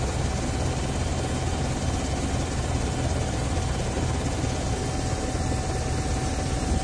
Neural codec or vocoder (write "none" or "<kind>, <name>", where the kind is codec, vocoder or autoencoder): none